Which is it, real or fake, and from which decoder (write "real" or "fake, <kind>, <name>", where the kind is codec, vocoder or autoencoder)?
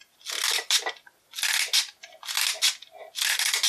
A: real